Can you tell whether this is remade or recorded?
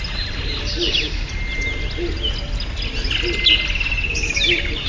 recorded